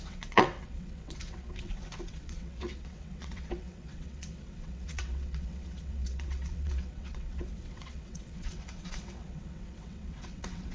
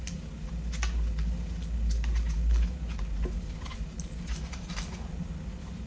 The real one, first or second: second